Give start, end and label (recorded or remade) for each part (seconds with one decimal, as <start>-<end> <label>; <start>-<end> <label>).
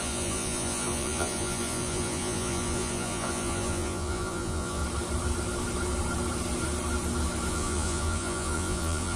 0.0-4.8 remade; 4.8-7.5 recorded; 7.5-9.2 remade